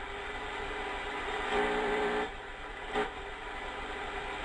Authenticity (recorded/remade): remade